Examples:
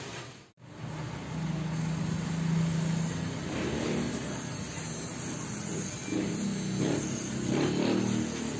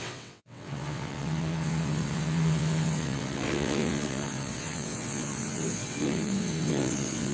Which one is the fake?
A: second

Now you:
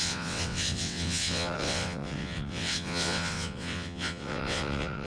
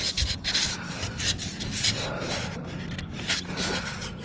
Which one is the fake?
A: first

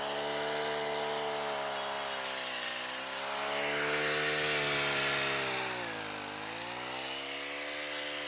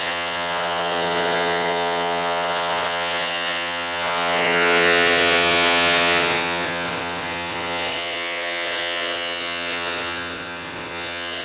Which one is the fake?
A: second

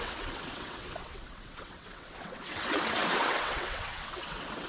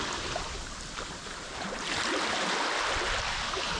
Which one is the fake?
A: first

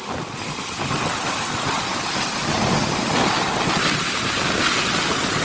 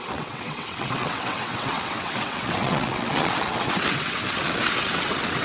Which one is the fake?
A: second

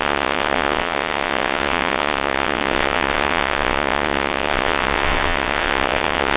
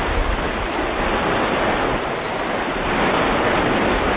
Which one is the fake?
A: first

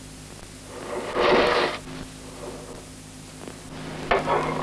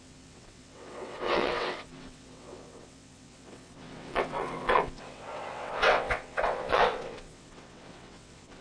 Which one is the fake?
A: second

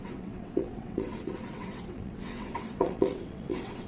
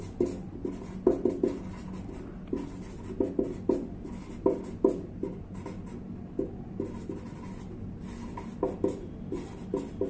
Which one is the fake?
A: first